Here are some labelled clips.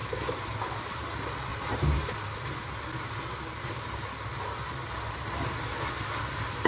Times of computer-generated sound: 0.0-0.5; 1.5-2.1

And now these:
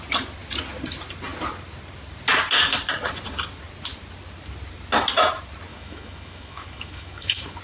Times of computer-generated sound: 5.7-7.6

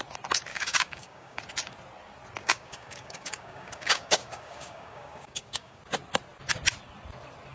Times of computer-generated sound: 0.5-1.4; 2.4-5.8

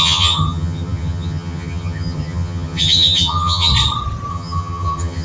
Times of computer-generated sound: 0.0-3.7; 4.3-5.2

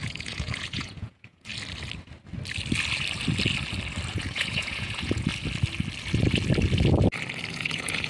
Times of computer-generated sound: 0.0-1.5; 4.1-5.3; 7.5-8.1